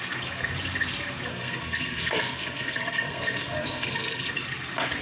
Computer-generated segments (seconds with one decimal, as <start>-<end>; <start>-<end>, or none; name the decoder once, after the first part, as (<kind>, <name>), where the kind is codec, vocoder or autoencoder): 1.3-4.3 (codec, SNAC)